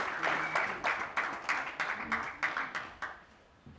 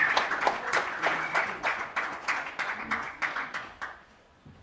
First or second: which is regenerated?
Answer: second